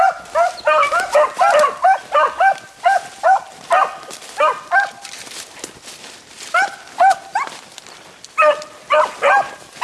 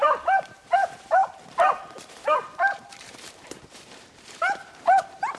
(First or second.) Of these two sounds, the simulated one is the second